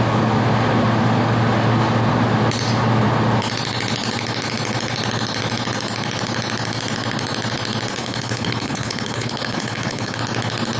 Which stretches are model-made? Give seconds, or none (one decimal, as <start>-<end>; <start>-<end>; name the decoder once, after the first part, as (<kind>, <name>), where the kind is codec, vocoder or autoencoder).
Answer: 8.0-10.2 (codec, HILCodec)